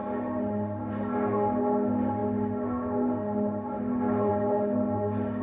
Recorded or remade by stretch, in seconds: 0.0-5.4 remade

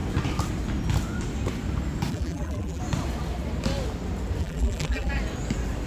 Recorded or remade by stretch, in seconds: 0.0-2.1 recorded; 2.1-2.8 remade; 2.8-4.4 recorded; 4.4-5.1 remade; 5.1-5.9 recorded

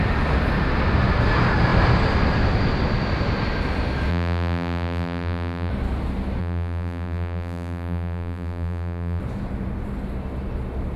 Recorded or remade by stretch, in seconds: 0.0-4.1 recorded; 4.1-5.7 remade; 5.7-6.4 recorded; 6.4-9.2 remade; 9.2-11.0 recorded